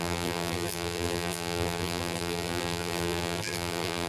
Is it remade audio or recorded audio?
remade